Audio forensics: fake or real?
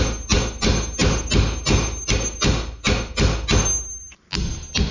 real